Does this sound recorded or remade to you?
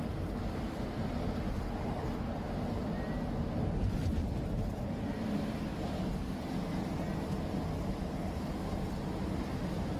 recorded